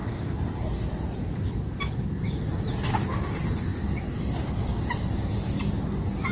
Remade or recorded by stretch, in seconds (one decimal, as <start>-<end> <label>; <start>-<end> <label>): 0.0-1.5 remade; 1.5-6.3 recorded